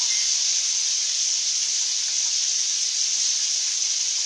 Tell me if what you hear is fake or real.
real